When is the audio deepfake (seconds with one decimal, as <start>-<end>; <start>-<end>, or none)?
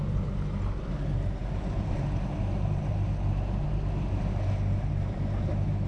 none